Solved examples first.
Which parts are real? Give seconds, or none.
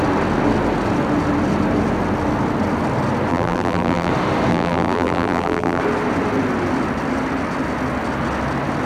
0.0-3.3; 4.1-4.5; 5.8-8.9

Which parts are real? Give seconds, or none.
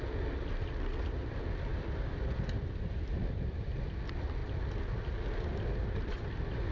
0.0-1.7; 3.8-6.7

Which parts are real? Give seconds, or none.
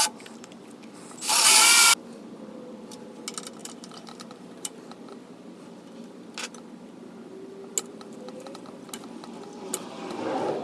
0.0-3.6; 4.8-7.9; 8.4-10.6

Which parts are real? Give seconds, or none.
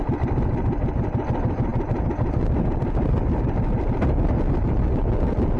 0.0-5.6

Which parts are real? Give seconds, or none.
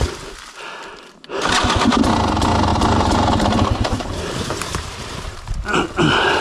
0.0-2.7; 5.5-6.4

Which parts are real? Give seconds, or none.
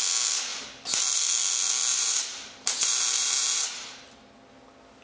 0.0-1.9; 4.3-5.0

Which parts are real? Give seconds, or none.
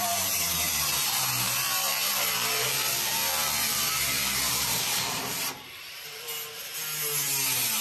6.3-7.8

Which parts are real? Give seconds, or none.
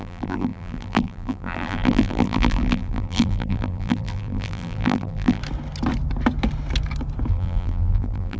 5.4-7.3